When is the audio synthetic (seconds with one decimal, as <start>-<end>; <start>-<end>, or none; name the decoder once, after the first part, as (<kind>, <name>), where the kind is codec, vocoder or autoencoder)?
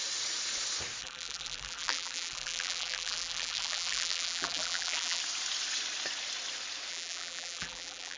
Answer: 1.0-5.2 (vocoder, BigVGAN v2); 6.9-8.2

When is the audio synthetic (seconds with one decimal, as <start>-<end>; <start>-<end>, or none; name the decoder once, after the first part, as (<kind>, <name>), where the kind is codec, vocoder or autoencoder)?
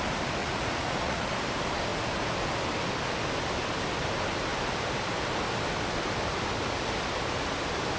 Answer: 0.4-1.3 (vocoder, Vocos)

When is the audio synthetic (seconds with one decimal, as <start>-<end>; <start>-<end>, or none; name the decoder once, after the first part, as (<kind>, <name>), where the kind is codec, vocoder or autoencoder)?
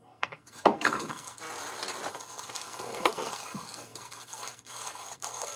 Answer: 0.0-1.4 (codec, SNAC); 2.1-5.6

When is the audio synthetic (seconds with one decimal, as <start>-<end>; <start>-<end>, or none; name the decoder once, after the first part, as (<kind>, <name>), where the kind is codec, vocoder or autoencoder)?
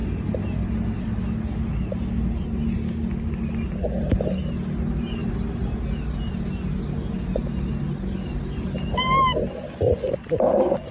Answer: none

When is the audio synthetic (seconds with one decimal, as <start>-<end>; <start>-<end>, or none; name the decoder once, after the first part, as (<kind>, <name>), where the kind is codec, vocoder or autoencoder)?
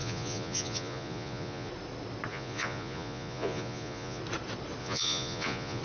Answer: 0.0-1.7 (vocoder, Vocos); 2.3-4.2; 4.8-5.8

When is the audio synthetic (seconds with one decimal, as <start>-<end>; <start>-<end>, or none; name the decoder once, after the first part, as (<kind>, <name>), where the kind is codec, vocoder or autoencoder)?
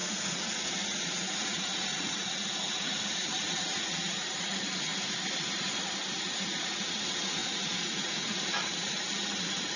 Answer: 0.0-4.9 (vocoder, Vocos); 6.2-9.8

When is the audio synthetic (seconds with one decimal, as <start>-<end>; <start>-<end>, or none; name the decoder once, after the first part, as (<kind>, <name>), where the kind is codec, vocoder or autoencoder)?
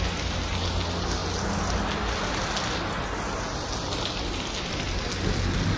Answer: none